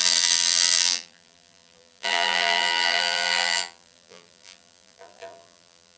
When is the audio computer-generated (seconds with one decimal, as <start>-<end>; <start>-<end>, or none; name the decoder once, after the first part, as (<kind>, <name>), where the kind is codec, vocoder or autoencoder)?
0.0-6.0 (vocoder, BigVGAN v2)